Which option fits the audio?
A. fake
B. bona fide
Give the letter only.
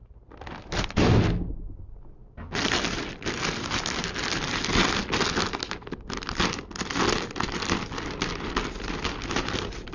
B